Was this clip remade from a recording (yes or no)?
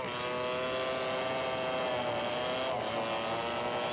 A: no